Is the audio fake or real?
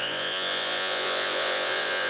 fake